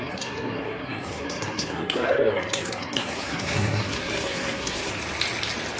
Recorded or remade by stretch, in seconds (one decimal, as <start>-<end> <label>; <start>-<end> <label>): 0.0-4.9 remade; 4.9-5.8 recorded